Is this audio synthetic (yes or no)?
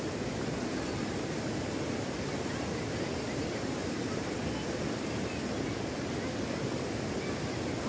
no